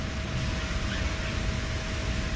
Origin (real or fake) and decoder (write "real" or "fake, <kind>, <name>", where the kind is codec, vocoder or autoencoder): real